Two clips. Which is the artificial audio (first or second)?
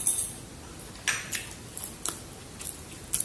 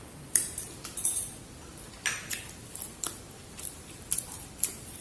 second